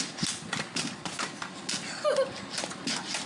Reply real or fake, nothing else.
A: real